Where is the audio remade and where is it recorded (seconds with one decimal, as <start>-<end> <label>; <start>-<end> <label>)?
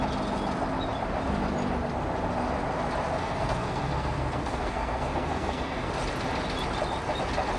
0.0-3.2 recorded; 3.2-5.9 remade; 5.9-7.6 recorded